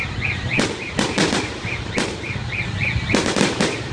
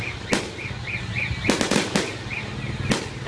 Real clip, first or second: second